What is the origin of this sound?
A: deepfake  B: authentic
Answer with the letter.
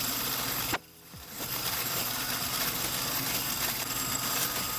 B